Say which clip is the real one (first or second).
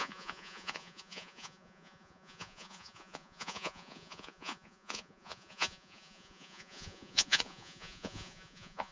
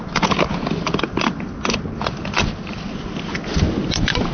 second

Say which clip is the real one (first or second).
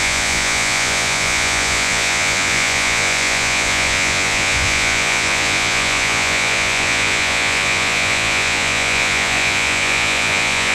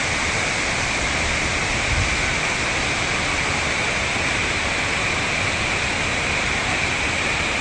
second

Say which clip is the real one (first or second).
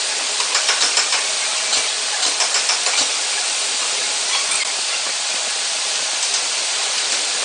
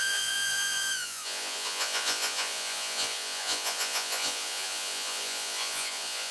first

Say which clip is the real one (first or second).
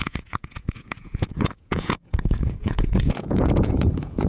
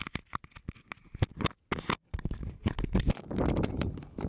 second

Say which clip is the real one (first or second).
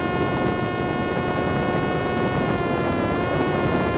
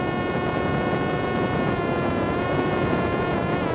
first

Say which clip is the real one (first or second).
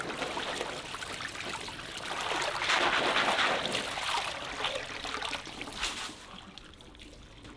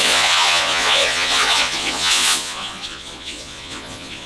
first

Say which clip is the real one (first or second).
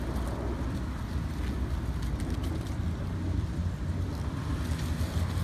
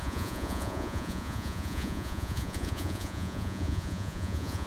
first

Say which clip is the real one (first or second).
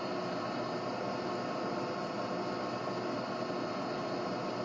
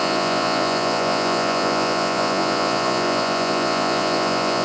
first